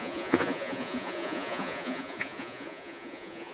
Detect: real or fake fake